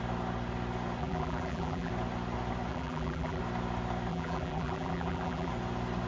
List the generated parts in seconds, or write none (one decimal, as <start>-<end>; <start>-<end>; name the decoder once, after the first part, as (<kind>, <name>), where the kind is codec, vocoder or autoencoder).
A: 1.0-1.9 (vocoder, BigVGAN v2); 2.7-3.4; 4.1-5.5